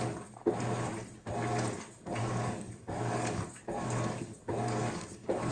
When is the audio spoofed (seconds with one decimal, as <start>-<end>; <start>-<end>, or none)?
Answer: 2.2-5.5